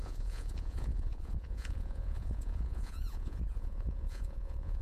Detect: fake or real fake